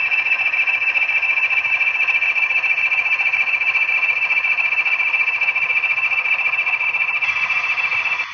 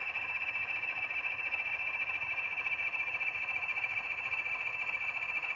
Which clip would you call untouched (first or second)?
first